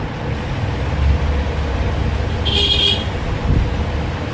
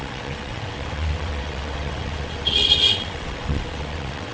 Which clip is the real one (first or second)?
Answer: first